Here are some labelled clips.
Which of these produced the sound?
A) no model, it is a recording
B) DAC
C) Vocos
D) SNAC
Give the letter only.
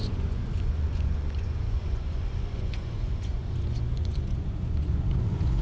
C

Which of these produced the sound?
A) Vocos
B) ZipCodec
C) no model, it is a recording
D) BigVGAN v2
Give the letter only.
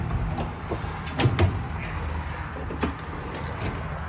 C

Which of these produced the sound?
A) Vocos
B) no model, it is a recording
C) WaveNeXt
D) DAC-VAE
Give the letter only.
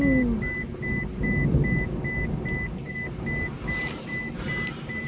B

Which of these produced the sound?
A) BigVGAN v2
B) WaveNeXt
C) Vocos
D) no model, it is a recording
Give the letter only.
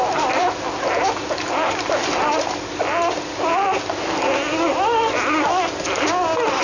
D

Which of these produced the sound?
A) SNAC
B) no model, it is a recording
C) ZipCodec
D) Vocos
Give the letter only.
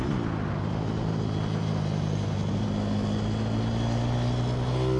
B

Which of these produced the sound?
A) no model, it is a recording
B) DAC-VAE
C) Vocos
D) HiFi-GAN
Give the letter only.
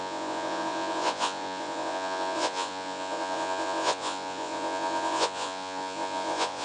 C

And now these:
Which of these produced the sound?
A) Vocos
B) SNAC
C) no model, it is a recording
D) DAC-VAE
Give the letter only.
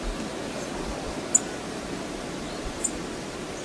C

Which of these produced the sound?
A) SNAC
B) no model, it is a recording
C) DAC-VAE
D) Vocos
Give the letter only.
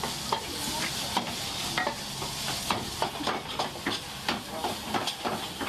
B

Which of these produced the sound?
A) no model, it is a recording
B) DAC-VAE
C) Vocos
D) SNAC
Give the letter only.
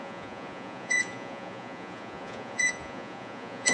C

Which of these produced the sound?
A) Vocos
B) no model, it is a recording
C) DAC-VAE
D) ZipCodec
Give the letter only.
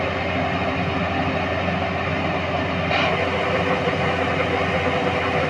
B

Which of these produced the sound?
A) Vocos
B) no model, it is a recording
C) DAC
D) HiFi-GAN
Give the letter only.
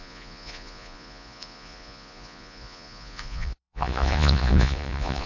A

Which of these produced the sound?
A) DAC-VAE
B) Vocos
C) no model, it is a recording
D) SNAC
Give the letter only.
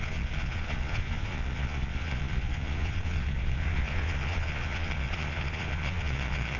B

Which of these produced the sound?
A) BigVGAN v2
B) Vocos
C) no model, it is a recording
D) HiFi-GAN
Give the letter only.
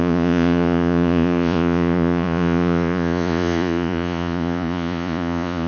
B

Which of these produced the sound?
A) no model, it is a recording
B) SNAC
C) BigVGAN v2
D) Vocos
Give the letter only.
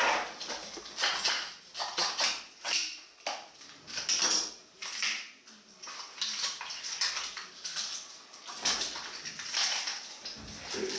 A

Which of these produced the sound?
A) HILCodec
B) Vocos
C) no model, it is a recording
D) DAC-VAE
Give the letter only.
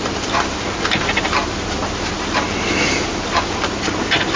C